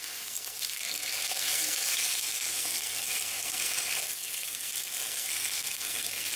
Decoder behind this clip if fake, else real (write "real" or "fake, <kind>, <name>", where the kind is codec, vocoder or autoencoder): fake, codec, SNAC